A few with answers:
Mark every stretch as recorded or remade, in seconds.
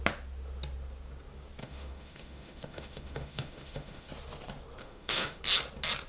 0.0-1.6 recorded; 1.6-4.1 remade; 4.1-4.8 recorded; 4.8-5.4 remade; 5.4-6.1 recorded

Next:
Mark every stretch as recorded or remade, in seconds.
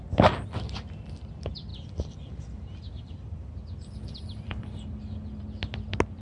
0.0-1.7 recorded; 1.7-5.4 remade; 5.4-6.2 recorded